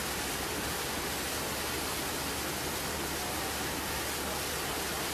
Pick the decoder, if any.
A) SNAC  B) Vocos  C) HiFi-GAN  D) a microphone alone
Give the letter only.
D